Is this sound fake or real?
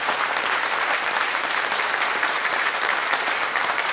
fake